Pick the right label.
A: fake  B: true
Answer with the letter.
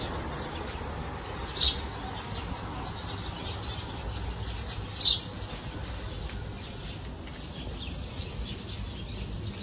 B